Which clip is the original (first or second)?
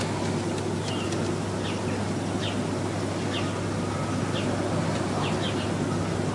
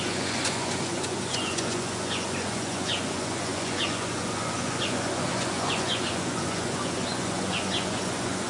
first